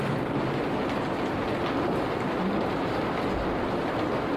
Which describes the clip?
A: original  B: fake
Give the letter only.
A